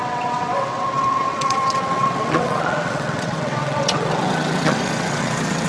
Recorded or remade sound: remade